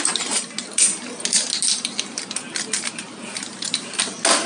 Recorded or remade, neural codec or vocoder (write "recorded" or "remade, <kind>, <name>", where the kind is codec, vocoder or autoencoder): recorded